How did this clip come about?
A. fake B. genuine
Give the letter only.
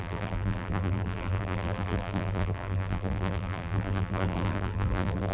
A